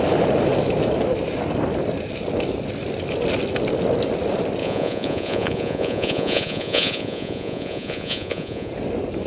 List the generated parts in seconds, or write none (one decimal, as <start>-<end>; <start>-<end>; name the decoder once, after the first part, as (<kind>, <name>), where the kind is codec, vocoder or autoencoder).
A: 4.6-8.7 (vocoder, Vocos)